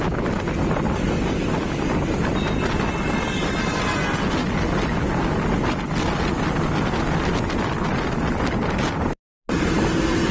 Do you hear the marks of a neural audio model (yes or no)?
no